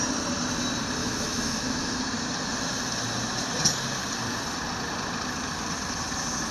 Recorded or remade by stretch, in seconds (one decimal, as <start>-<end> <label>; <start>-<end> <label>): 0.0-1.0 recorded; 1.0-2.0 remade; 2.0-6.5 recorded